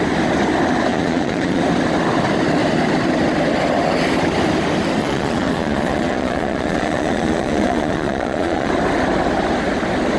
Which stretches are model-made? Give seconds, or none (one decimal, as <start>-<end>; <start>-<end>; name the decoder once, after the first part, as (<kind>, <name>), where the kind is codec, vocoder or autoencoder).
0.9-1.6 (vocoder, Vocos); 5.0-8.7